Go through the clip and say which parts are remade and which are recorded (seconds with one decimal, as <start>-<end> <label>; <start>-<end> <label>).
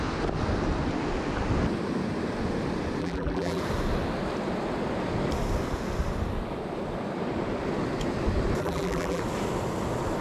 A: 0.0-3.0 recorded; 3.0-3.6 remade; 3.6-8.6 recorded; 8.6-9.2 remade; 9.2-10.2 recorded